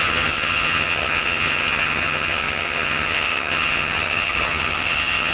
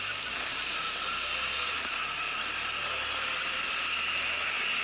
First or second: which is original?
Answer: second